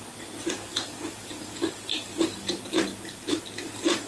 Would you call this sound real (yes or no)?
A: yes